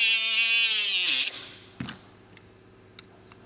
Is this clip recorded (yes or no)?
yes